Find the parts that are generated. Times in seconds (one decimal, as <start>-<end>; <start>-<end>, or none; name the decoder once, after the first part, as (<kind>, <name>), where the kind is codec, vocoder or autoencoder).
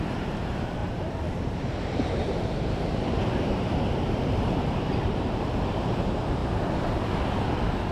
0.0-6.4 (vocoder, BigVGAN v2); 6.9-7.9